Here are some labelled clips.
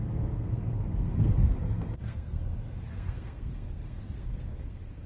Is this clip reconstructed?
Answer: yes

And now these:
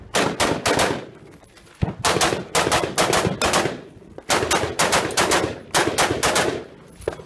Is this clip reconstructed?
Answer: no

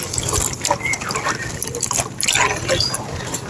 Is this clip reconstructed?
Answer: no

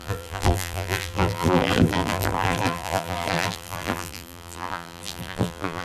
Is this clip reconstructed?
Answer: yes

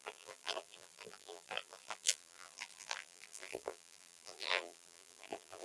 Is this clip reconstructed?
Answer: yes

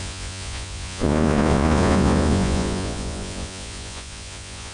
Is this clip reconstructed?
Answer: yes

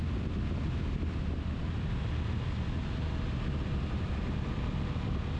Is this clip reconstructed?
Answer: no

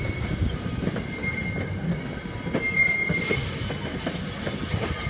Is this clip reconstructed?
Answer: no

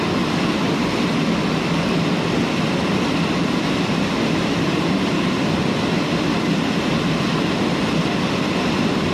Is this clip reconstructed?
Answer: no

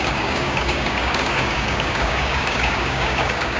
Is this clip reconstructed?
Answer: yes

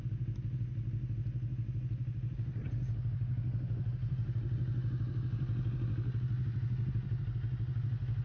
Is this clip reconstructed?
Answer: no